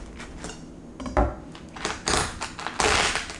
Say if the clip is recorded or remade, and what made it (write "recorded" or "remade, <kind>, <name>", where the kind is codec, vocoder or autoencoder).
recorded